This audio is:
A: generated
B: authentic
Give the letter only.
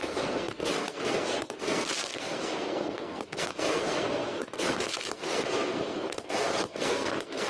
A